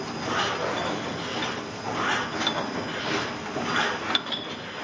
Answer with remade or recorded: recorded